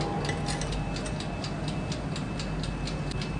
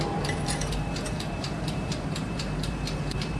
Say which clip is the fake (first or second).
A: second